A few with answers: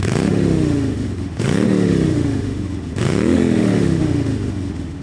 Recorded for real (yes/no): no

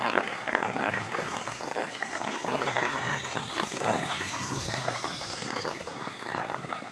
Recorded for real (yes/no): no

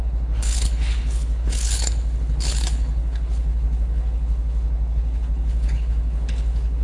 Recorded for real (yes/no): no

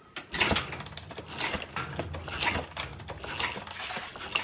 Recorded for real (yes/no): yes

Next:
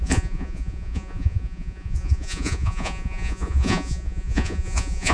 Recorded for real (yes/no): no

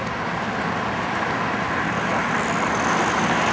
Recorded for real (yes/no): yes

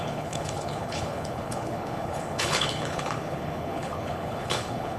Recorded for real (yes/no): no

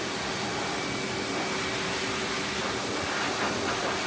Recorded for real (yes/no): yes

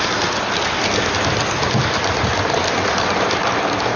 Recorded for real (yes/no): yes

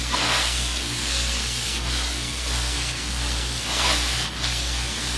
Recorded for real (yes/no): no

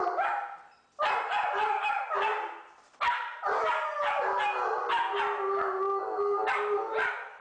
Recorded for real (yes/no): yes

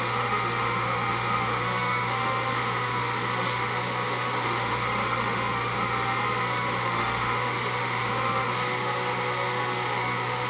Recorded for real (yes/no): no